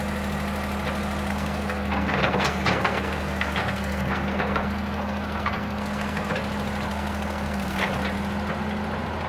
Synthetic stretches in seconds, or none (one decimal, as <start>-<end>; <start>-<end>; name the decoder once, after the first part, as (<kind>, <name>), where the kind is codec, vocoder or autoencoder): 1.3-6.3 (codec, SNAC); 6.9-7.9